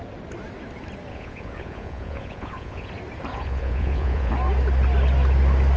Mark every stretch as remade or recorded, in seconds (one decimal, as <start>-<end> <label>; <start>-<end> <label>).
0.0-1.1 recorded; 1.1-2.9 remade; 2.9-3.3 recorded; 3.3-4.3 remade; 4.3-5.8 recorded